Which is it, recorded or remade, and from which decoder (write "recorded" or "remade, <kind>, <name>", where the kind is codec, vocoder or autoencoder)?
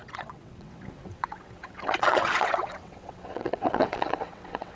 remade, vocoder, WaveNeXt